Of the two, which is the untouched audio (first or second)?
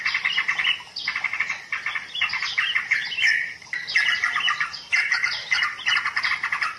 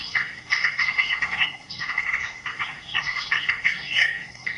first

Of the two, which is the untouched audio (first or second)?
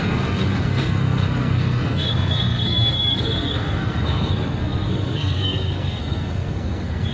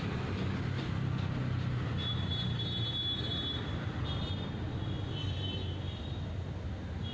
second